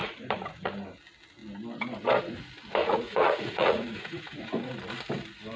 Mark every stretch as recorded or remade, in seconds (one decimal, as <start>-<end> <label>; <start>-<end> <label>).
0.0-0.7 remade; 0.7-2.8 recorded; 2.8-4.7 remade; 4.7-5.6 recorded